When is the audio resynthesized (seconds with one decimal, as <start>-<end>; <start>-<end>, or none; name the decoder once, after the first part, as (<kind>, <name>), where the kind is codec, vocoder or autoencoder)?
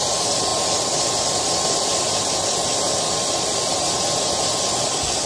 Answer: none